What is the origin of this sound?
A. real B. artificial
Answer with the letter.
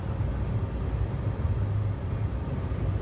A